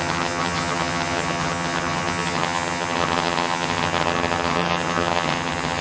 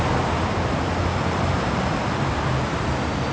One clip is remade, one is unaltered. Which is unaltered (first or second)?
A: second